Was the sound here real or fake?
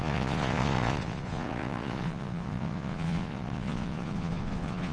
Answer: fake